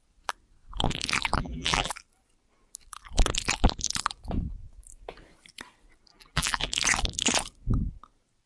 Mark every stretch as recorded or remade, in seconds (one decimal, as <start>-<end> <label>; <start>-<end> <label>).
0.0-1.4 recorded; 1.4-1.9 remade; 1.9-6.1 recorded; 6.1-6.7 remade; 6.7-8.5 recorded